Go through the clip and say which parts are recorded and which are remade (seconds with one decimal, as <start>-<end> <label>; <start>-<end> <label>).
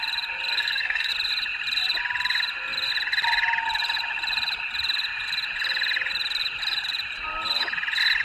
0.0-0.5 recorded; 0.5-1.1 remade; 1.1-8.2 recorded